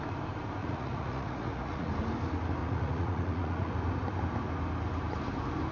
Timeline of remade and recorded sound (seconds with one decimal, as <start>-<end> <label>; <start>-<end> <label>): 0.0-0.6 recorded; 0.6-1.9 remade; 1.9-2.6 recorded; 2.6-3.7 remade; 3.7-5.7 recorded